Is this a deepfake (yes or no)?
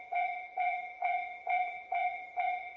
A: yes